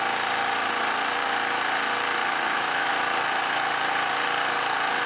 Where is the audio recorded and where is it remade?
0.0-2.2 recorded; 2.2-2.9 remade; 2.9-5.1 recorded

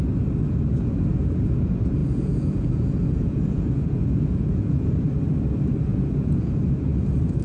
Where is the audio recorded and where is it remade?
0.0-1.1 recorded; 1.1-1.6 remade; 1.6-2.0 recorded; 2.0-4.9 remade; 4.9-5.9 recorded; 5.9-6.6 remade; 6.6-7.4 recorded

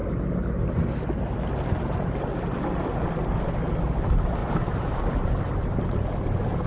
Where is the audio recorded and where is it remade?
0.0-4.4 recorded; 4.4-5.0 remade; 5.0-6.7 recorded